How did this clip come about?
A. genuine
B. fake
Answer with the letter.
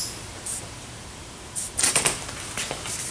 B